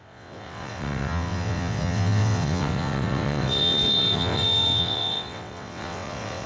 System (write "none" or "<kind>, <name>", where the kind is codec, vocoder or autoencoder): vocoder, WaveNeXt